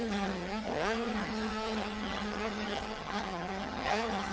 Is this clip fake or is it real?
fake